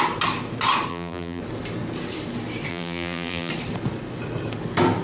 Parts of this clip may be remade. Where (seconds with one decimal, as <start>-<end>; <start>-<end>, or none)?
0.9-1.4; 2.7-3.5